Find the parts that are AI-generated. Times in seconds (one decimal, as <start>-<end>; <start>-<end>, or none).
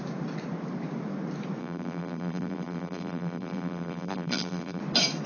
1.6-4.8